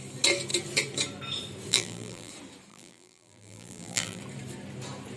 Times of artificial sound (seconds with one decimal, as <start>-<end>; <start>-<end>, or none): 1.7-2.3; 2.7-4.2